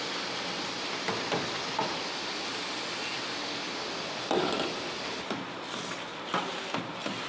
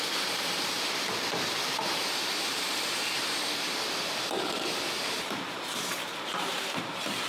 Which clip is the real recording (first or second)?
first